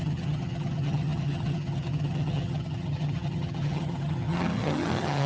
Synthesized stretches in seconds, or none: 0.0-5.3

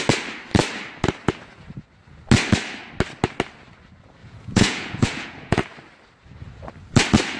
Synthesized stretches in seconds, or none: 4.2-5.6

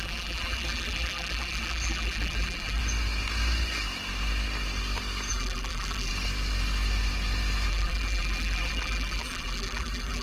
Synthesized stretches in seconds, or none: 0.0-2.8; 5.3-6.1; 7.7-10.2

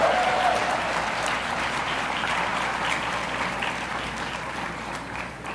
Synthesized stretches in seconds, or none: 0.0-2.5; 3.5-5.5